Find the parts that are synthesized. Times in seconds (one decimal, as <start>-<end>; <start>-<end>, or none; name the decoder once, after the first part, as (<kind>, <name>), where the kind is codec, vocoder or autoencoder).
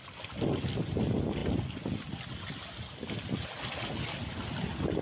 none